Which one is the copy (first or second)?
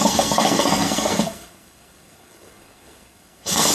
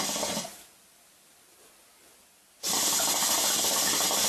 first